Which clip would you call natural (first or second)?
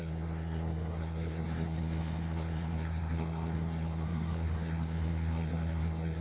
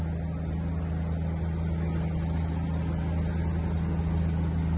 second